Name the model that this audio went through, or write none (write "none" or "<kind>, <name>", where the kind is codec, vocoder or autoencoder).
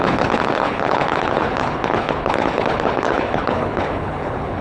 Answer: codec, HILCodec